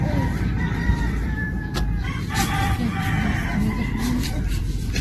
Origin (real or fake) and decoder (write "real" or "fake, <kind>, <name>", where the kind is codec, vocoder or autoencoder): fake, vocoder, BigVGAN v2